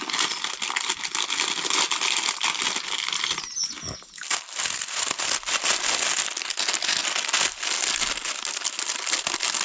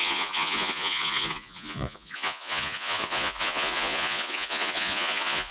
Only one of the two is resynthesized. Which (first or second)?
second